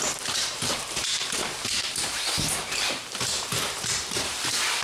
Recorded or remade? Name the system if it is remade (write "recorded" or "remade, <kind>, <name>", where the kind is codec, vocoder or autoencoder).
remade, vocoder, BigVGAN v2